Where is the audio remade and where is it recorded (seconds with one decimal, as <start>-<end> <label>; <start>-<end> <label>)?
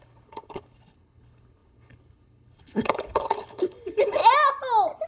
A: 0.0-4.2 remade; 4.2-5.1 recorded